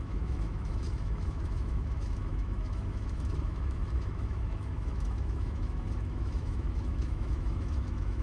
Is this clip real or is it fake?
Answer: fake